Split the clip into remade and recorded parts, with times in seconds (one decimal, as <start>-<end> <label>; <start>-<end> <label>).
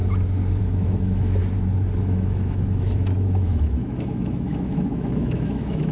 0.0-0.6 recorded; 0.6-1.4 remade; 1.4-2.0 recorded; 2.0-5.9 remade